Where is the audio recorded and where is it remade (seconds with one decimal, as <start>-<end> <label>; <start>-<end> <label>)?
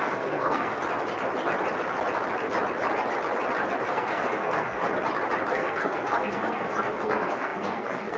0.0-0.7 remade; 0.7-3.9 recorded; 3.9-4.8 remade; 4.8-5.5 recorded; 5.5-8.2 remade